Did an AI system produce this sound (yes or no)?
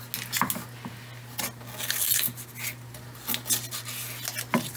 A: no